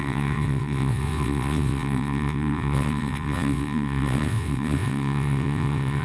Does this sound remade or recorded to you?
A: remade